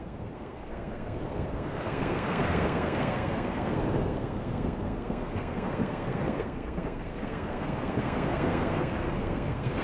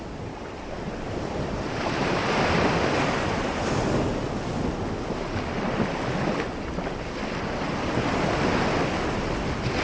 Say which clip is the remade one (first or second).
first